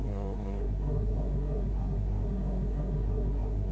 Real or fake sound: fake